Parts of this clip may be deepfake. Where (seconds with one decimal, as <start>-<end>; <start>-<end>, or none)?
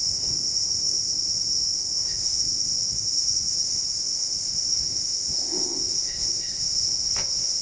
0.0-7.6